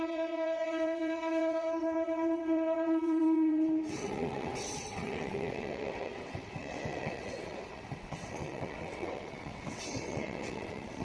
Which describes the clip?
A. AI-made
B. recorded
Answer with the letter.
A